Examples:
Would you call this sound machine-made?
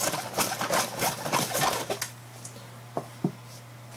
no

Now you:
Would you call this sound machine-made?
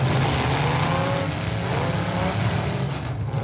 no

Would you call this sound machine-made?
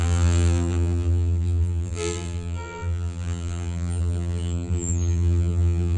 yes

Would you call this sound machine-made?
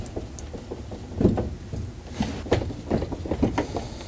no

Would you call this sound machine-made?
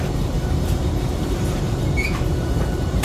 yes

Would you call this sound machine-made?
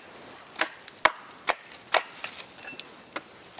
no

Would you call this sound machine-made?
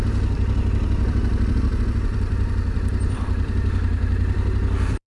yes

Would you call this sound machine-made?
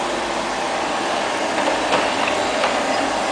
no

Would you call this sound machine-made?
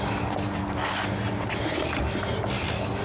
no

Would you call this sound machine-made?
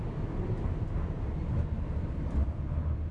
no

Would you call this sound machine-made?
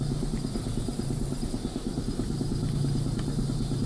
yes